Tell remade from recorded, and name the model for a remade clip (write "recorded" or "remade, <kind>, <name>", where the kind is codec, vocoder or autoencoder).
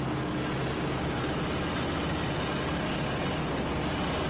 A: recorded